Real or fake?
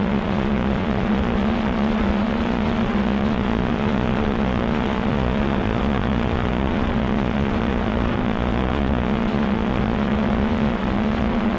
fake